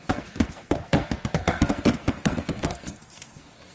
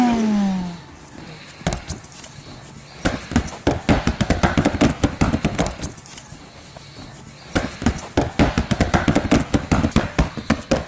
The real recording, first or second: second